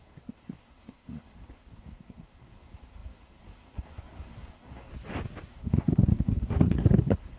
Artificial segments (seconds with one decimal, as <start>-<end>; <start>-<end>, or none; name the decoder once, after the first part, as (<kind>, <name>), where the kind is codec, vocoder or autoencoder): 0.0-4.9 (codec, SNAC); 5.5-7.4

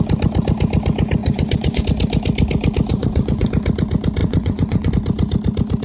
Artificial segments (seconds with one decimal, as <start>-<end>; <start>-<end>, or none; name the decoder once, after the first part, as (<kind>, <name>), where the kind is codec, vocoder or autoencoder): 1.2-1.8 (vocoder, Vocos); 2.9-3.5; 4.2-4.9

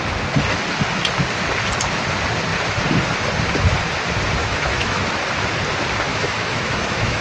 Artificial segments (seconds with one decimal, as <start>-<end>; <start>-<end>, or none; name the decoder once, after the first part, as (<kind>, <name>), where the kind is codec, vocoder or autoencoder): 4.4-5.1 (autoencoder, DAC-VAE); 6.1-7.2

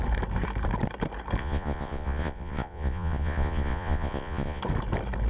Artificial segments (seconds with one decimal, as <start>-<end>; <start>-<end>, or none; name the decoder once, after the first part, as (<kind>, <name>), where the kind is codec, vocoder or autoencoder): 1.4-4.6 (vocoder, Vocos)

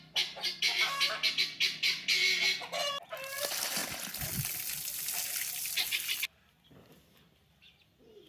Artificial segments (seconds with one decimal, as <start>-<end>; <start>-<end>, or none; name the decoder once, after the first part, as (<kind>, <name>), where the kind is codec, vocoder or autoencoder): none